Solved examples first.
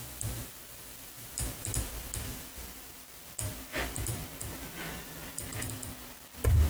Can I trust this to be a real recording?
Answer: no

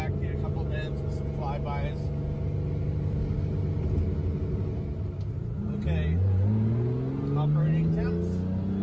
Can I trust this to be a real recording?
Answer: yes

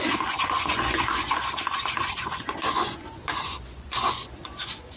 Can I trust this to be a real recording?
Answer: no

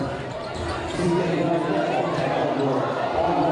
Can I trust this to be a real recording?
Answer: yes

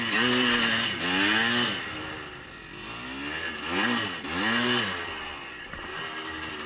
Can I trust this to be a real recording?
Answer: yes